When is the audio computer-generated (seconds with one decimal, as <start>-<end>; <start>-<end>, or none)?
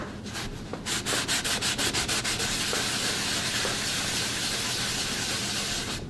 0.0-0.7; 3.9-4.4; 5.1-6.1